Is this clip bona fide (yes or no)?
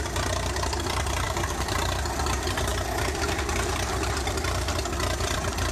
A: no